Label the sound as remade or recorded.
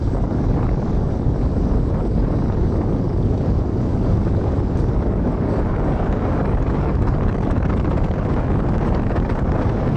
remade